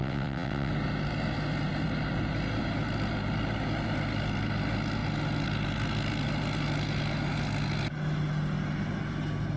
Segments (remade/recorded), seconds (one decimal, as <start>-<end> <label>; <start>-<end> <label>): 0.0-0.7 remade; 0.7-9.6 recorded